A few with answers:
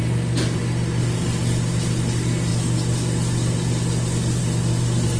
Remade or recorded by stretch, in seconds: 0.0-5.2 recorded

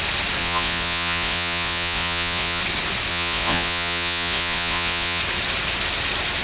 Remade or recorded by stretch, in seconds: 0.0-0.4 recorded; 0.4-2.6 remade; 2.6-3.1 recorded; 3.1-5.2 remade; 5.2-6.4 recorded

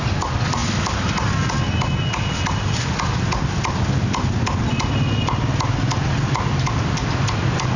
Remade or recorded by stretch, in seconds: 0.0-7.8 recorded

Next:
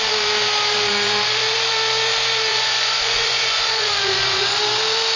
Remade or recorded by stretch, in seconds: 0.0-2.5 recorded; 2.5-4.6 remade; 4.6-5.2 recorded

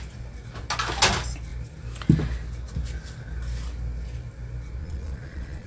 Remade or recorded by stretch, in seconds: 0.0-4.8 recorded; 4.8-5.7 remade

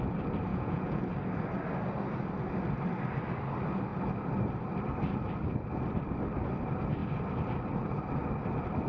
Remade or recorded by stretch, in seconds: 0.0-0.5 recorded; 0.5-1.0 remade; 1.0-8.9 recorded